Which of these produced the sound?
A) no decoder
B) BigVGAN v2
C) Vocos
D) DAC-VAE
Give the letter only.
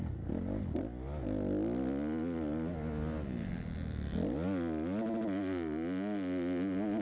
A